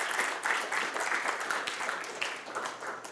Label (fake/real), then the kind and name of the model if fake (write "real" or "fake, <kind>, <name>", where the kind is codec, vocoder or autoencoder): fake, vocoder, BigVGAN v2